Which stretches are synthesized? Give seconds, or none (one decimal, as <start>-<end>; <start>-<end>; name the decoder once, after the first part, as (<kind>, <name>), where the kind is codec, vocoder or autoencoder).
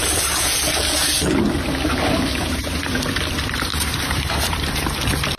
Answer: 3.7-4.8 (vocoder, BigVGAN v2)